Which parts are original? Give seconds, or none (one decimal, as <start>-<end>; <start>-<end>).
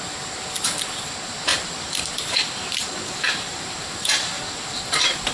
0.0-1.5; 4.7-5.3